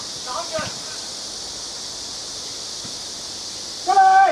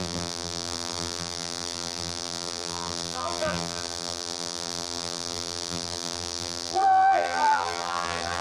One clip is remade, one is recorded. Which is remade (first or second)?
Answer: second